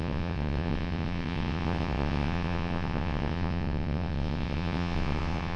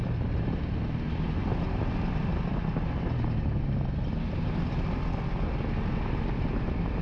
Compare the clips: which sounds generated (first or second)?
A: first